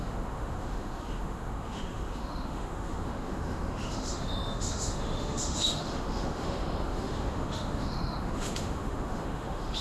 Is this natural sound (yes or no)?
no